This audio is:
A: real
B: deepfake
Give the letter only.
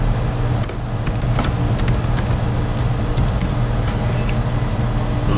A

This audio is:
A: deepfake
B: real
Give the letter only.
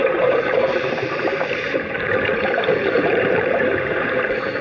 A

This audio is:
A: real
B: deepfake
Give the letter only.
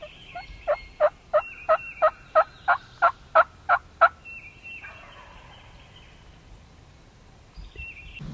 A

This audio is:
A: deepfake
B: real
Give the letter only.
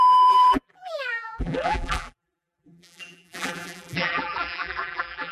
A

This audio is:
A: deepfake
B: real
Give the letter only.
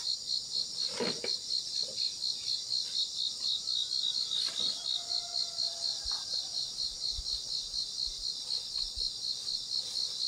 B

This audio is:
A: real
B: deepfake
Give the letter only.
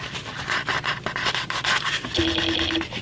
A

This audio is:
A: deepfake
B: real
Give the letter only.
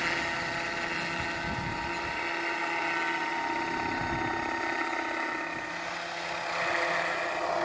B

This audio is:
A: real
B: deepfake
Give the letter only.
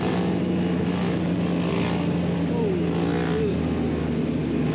A